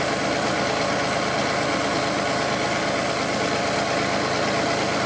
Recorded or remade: recorded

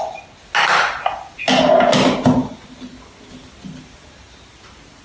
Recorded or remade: recorded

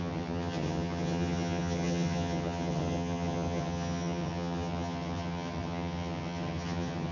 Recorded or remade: remade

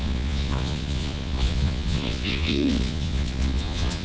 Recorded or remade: remade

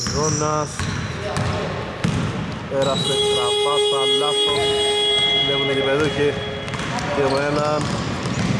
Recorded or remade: recorded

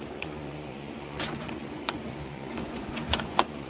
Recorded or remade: remade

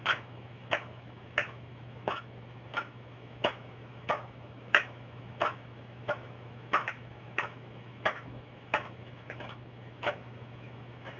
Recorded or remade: remade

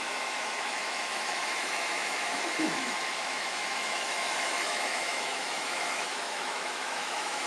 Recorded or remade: remade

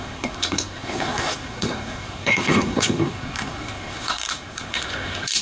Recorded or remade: remade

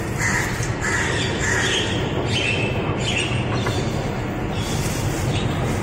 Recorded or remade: recorded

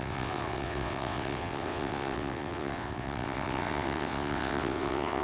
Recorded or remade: remade